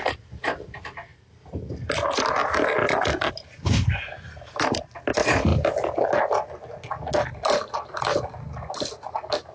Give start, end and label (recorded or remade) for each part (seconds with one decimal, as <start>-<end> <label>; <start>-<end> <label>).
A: 0.0-9.5 recorded